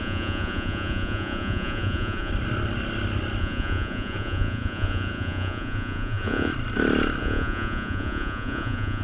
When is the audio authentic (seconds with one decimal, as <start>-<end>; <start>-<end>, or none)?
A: 2.3-3.4; 6.5-7.2